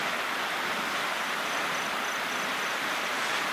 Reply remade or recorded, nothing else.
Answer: recorded